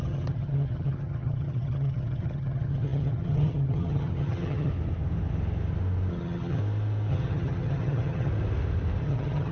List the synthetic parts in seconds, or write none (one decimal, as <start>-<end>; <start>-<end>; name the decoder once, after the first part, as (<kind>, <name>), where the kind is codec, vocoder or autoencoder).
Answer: 0.0-4.7 (vocoder, HiFi-GAN); 6.1-6.6; 7.1-8.3; 9.0-9.5